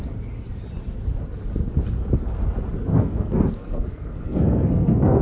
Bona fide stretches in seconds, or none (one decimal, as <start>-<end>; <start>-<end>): 0.0-2.9